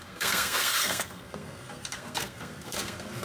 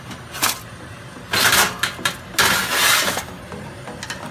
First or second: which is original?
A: second